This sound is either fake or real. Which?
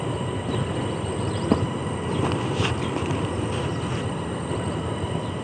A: fake